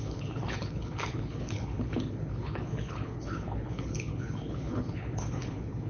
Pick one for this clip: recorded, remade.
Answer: remade